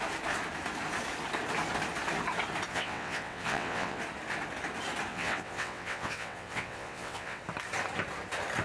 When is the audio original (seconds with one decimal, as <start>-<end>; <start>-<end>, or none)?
0.0-2.7; 4.0-5.1; 7.4-8.6